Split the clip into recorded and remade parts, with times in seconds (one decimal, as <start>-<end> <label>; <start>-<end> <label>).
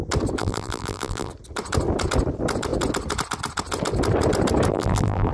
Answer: 0.0-0.4 recorded; 0.4-1.3 remade; 1.3-4.7 recorded; 4.7-5.3 remade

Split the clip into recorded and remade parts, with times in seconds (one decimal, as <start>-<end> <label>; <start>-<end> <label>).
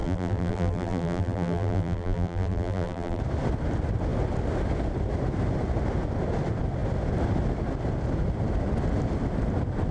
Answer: 0.0-3.2 remade; 3.2-9.9 recorded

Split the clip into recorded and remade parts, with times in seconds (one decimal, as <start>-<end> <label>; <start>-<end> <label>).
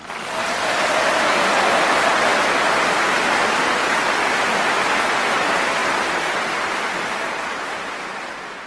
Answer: 0.0-8.7 recorded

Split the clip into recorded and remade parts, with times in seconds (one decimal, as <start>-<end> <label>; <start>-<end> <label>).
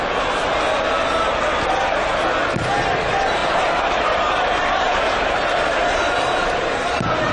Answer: 0.0-3.4 recorded; 3.4-7.3 remade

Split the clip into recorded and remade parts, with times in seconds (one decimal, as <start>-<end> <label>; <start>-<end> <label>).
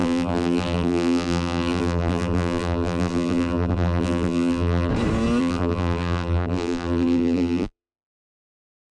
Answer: 0.0-4.9 remade; 4.9-5.4 recorded; 5.4-8.9 remade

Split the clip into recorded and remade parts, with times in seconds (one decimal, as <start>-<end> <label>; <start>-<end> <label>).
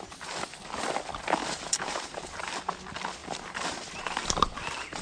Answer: 0.0-1.4 recorded; 1.4-2.6 remade; 2.6-3.2 recorded; 3.2-5.0 remade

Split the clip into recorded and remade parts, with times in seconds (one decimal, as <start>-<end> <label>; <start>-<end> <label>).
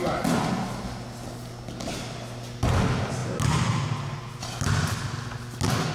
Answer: 0.0-5.9 recorded